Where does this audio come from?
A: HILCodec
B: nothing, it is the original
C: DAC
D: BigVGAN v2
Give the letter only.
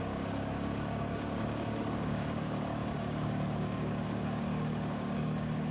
C